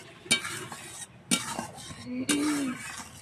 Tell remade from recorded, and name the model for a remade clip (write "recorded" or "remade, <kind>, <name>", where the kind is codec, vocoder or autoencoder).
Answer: recorded